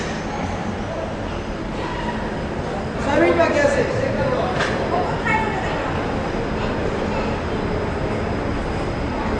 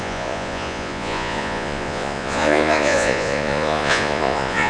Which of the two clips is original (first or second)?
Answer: first